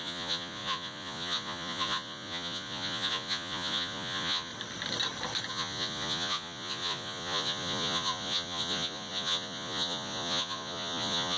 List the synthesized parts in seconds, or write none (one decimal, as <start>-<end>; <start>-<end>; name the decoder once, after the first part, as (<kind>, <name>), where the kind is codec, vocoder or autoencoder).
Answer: 0.0-4.5 (vocoder, Vocos); 5.5-11.4